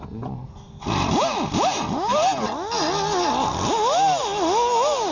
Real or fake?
real